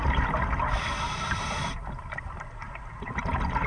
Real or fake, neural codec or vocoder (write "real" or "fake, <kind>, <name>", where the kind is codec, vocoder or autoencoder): real